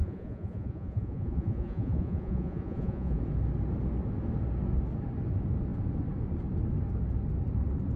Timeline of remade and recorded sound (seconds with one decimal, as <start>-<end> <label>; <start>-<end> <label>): 0.0-3.2 remade; 3.2-8.0 recorded

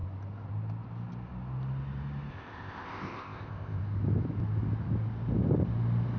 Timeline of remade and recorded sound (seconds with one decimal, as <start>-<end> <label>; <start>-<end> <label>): 0.0-2.3 recorded; 2.3-3.8 remade; 3.8-6.2 recorded

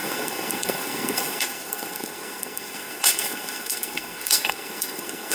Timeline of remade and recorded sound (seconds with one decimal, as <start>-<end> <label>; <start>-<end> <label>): 0.0-5.3 remade

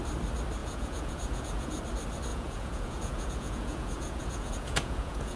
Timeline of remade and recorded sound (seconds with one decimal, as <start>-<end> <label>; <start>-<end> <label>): 0.0-0.6 recorded; 0.6-1.8 remade; 1.8-2.3 recorded; 2.3-5.4 remade